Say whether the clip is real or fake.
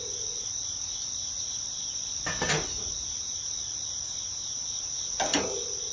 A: real